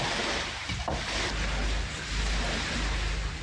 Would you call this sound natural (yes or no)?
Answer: yes